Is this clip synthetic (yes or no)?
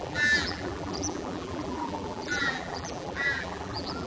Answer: yes